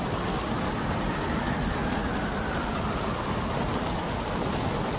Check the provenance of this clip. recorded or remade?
recorded